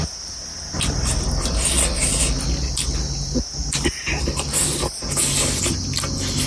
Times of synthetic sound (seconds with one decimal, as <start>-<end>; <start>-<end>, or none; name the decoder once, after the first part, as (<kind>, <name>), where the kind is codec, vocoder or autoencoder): none